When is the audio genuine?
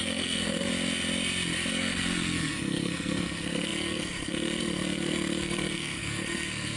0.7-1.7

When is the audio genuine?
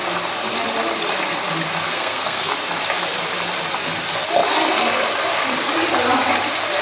0.0-1.9; 2.5-6.8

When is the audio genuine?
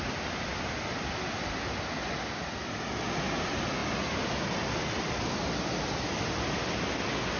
0.0-7.4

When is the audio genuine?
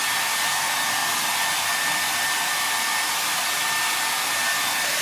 0.0-5.0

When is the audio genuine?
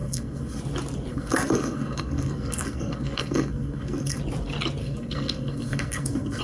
0.6-1.1; 4.2-4.8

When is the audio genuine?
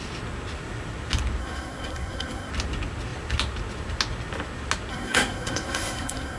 0.0-1.4; 2.5-4.9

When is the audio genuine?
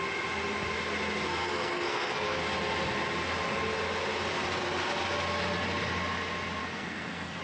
0.0-1.3; 2.4-6.6